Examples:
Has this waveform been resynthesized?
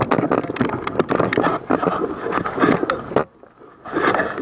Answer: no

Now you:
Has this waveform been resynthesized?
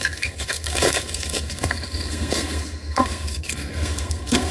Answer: yes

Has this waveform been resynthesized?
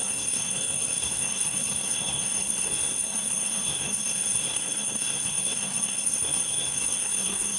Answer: yes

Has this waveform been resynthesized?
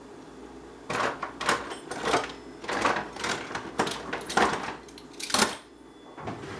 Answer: no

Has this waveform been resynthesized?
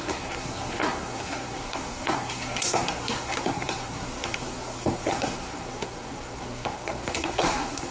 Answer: yes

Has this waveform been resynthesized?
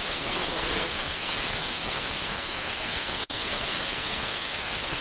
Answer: yes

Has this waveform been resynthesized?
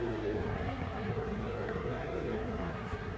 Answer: yes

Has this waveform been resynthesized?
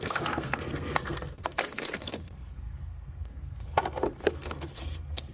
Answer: yes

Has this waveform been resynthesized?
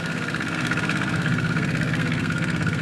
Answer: yes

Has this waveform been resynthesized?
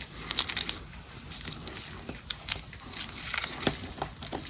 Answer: no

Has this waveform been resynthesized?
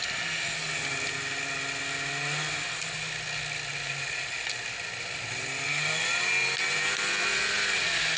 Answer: no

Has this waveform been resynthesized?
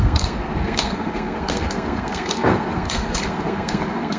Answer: yes